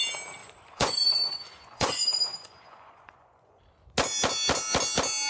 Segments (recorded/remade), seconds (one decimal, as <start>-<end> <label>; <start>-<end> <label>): 0.0-0.4 recorded; 0.4-3.6 remade; 3.6-5.3 recorded